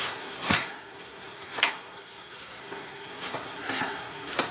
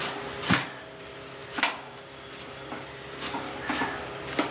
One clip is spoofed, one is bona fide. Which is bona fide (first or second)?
second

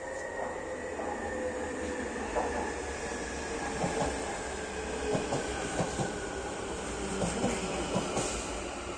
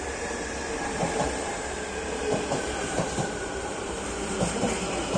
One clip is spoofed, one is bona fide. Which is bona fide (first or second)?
first